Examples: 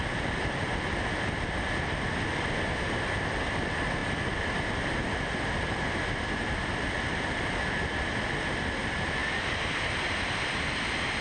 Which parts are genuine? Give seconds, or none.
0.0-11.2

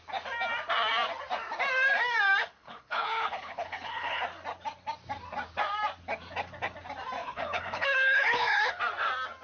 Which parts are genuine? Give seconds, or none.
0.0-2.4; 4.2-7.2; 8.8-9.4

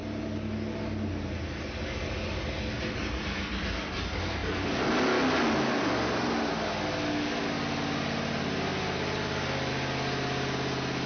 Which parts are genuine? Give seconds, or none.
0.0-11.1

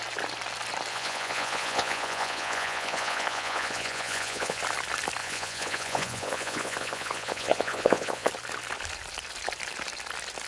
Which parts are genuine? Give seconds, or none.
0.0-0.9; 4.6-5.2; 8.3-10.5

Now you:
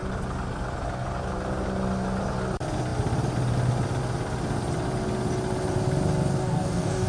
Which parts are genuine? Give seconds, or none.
0.0-6.3

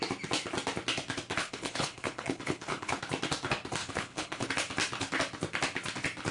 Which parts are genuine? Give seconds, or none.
0.0-1.4; 3.0-3.8; 4.5-6.3